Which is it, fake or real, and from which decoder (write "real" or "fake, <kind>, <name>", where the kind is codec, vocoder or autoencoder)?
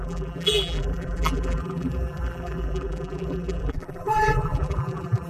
fake, vocoder, BigVGAN v2